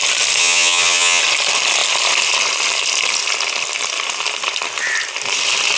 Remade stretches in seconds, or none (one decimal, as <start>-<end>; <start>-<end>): 0.4-1.2